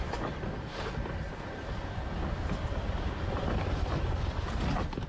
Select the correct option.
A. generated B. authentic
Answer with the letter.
B